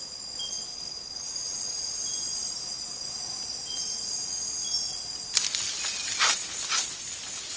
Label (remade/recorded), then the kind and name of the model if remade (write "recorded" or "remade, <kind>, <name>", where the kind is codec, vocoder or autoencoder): recorded